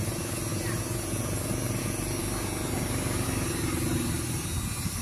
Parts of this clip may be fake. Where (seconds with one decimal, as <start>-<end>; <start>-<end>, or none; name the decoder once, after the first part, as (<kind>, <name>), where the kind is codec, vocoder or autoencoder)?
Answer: none